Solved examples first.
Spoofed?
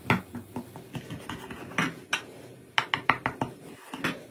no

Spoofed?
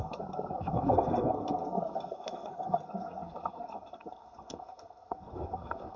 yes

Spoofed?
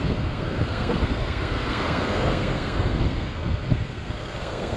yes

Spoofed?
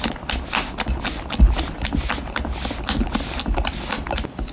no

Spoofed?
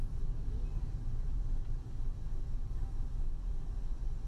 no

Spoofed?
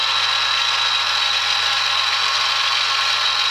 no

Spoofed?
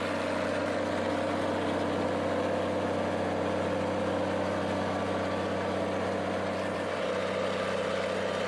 no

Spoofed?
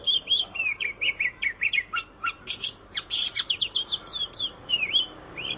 yes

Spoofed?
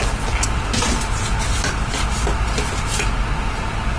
no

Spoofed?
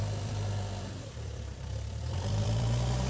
yes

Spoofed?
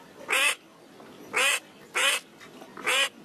no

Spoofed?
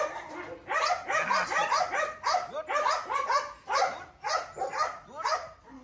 no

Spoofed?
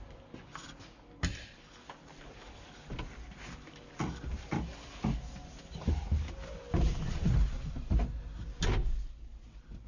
no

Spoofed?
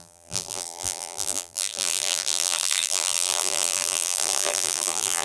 yes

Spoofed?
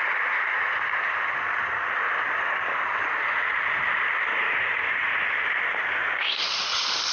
no